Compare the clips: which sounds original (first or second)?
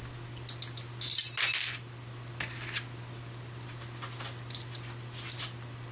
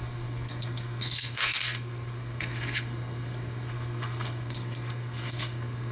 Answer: first